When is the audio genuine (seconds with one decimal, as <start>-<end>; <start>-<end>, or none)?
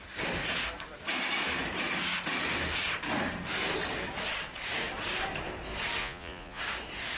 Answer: 0.0-6.0; 6.6-7.2